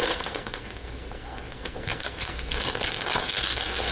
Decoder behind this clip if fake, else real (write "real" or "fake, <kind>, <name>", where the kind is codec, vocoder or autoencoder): fake, codec, SNAC